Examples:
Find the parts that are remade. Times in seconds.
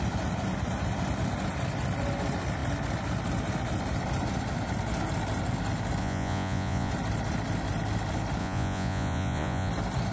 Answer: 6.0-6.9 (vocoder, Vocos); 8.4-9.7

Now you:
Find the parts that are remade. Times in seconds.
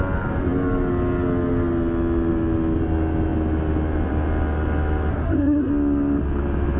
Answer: 5.1-5.7 (codec, SNAC)